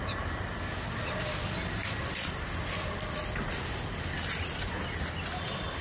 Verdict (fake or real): real